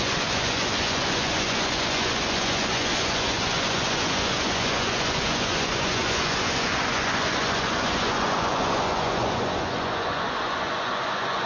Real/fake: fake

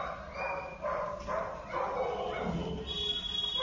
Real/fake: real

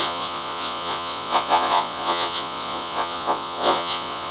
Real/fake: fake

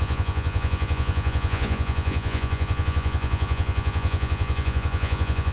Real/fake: fake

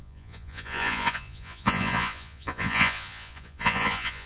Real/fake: fake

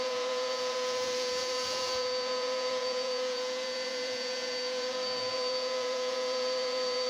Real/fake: fake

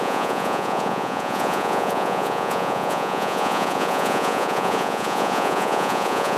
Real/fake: fake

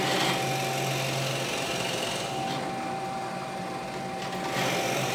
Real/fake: real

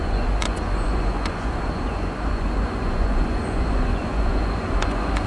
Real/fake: fake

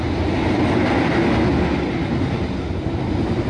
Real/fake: real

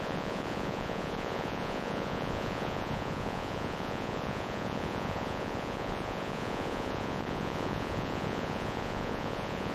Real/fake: fake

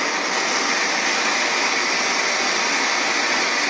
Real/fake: real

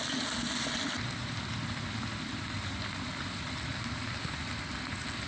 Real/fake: real